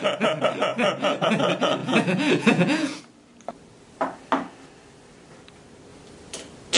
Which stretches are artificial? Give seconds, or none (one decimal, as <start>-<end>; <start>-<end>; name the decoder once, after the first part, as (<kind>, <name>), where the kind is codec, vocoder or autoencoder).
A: 1.8-3.0 (vocoder, Vocos)